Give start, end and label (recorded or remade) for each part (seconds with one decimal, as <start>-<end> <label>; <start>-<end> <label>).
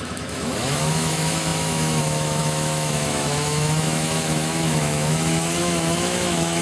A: 0.0-6.6 remade